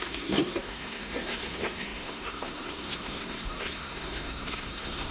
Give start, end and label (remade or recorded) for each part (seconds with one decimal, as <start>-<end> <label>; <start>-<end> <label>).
0.0-5.1 remade